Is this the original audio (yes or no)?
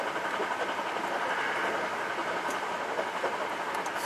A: yes